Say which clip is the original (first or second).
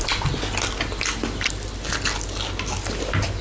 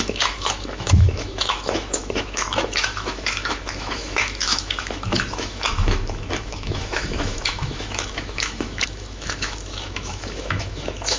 first